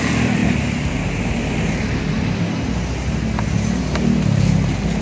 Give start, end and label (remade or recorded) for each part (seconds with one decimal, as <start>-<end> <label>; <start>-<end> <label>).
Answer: 0.0-5.0 recorded